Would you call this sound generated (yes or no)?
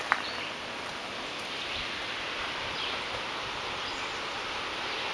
yes